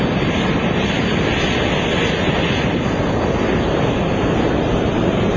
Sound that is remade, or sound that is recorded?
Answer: recorded